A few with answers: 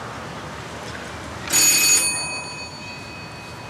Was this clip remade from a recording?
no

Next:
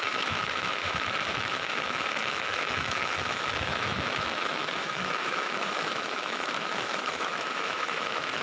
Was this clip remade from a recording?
yes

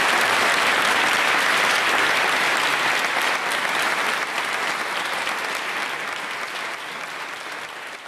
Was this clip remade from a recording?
no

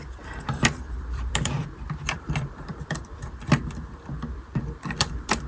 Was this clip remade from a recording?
yes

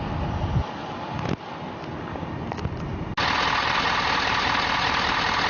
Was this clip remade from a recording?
no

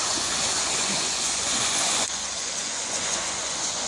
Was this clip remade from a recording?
yes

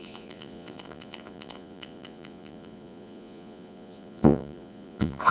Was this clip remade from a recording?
yes